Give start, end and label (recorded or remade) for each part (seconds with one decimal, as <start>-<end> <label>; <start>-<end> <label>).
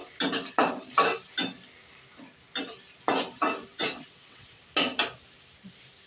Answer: 0.0-3.7 recorded; 3.7-4.6 remade; 4.6-6.1 recorded